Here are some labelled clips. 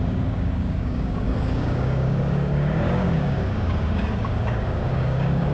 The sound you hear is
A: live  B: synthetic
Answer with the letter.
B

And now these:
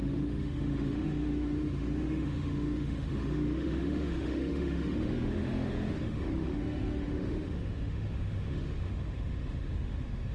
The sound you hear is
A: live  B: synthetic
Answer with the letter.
B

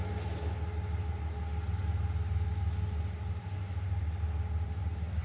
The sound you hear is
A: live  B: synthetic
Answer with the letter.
A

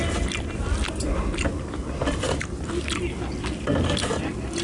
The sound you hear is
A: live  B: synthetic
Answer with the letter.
A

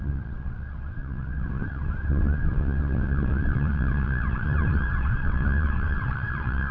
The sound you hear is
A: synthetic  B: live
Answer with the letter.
A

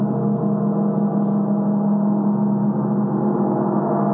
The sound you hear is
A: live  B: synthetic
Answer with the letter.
A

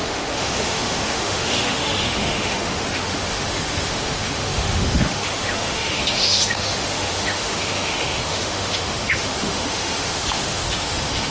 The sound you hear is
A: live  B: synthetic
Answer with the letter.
B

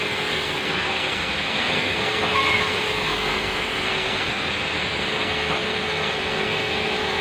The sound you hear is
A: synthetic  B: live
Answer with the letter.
A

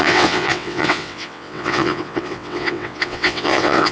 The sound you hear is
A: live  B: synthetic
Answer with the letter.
B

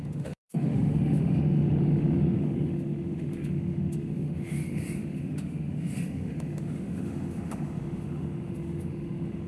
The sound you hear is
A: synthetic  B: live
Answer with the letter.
A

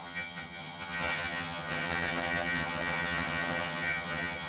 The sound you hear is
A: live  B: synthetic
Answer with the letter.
B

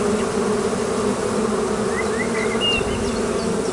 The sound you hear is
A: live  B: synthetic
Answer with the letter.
A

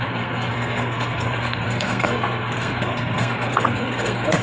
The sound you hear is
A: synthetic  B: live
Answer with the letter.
A